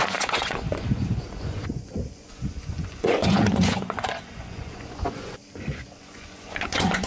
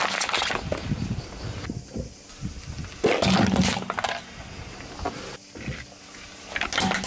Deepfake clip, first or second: first